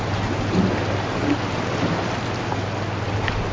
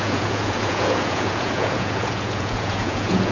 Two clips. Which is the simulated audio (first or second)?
second